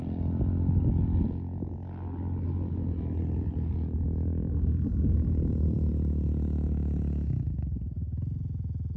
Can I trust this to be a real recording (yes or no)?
yes